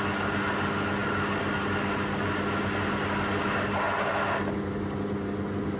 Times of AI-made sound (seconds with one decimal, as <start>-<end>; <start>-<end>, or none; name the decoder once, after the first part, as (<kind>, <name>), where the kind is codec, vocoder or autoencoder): none